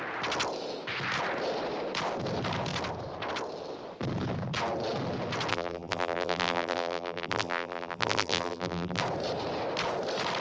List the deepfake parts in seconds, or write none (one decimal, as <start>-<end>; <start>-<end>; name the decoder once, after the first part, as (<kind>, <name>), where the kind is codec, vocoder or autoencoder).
5.5-9.0 (vocoder, BigVGAN v2)